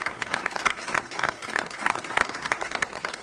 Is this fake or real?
fake